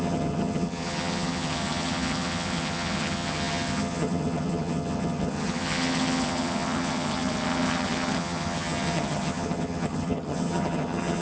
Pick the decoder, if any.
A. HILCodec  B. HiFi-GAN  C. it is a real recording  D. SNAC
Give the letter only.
B